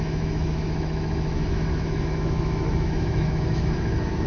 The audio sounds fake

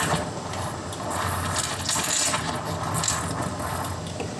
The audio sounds real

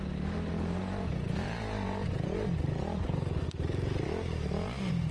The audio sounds real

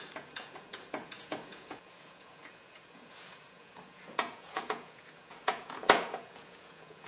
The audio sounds fake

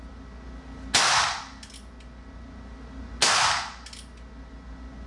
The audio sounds real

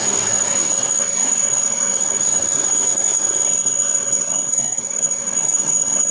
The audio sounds fake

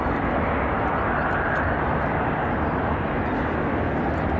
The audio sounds real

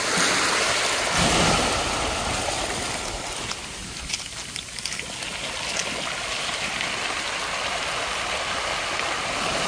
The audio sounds real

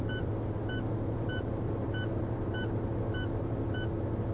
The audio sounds real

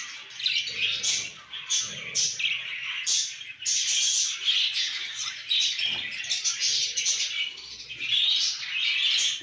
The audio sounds real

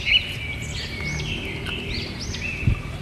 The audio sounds real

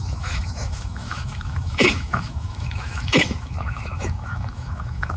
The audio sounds fake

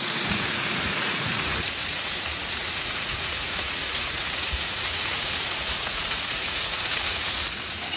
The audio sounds fake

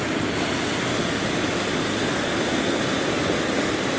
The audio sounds real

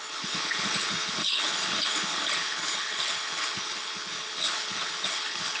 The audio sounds fake